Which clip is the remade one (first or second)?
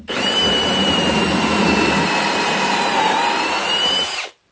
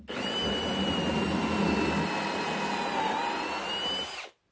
first